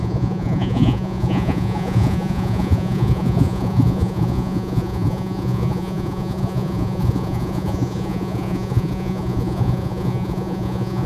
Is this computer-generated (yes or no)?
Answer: yes